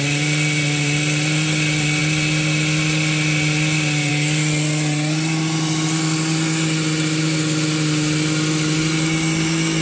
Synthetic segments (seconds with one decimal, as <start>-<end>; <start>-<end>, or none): none